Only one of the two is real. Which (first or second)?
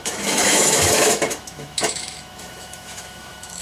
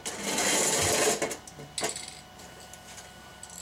second